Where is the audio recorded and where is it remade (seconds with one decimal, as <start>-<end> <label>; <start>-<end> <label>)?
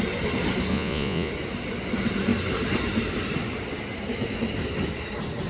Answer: 0.0-0.7 recorded; 0.7-1.3 remade; 1.3-5.5 recorded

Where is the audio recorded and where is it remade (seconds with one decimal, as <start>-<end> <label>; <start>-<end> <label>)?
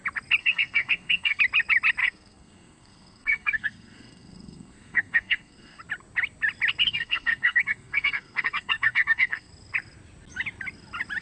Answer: 0.0-0.4 recorded; 0.4-1.4 remade; 1.4-2.0 recorded; 2.0-5.8 remade; 5.8-6.8 recorded; 6.8-9.5 remade; 9.5-11.2 recorded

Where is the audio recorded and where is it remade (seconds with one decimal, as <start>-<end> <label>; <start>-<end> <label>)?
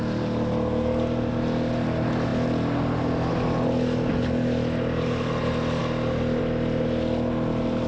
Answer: 0.0-7.9 recorded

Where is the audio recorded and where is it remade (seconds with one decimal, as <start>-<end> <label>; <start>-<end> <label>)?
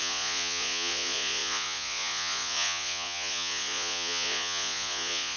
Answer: 0.0-5.4 remade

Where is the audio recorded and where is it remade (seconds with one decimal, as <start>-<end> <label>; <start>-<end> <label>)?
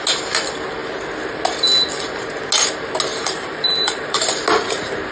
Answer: 0.0-3.1 recorded; 3.1-4.3 remade; 4.3-5.1 recorded